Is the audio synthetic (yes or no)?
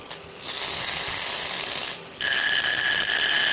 no